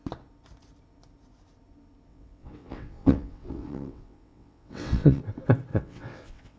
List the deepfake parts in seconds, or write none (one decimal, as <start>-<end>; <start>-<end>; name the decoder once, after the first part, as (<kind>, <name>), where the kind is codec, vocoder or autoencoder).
2.1-5.2 (vocoder, WaveNeXt); 5.7-6.6